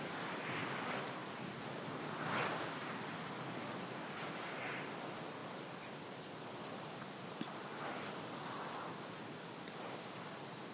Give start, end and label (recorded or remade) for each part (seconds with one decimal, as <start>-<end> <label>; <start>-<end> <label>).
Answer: 0.0-10.7 recorded